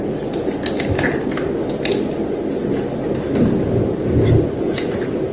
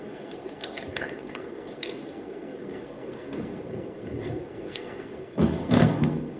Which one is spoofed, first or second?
second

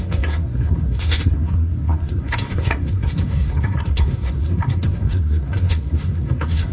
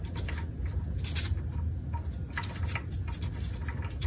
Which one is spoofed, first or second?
first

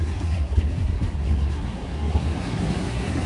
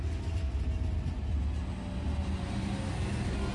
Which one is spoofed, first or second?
first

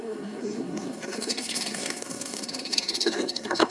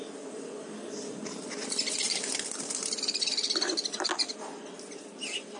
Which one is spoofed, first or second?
first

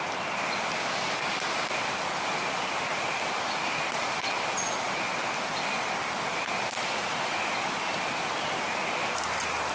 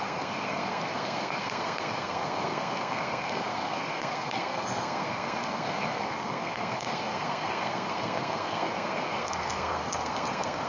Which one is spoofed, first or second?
second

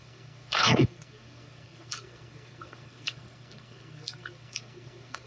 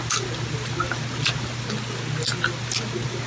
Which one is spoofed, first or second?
first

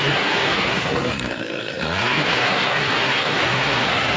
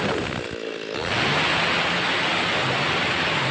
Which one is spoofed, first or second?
first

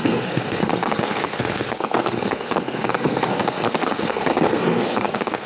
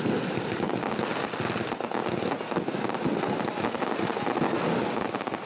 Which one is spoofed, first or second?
first